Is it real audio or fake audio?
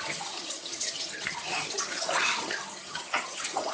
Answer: fake